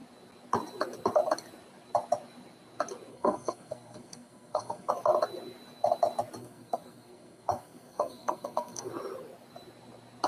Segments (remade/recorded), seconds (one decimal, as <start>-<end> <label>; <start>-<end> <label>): 0.0-3.1 recorded; 3.1-4.9 remade; 4.9-6.4 recorded; 6.4-8.9 remade; 8.9-10.3 recorded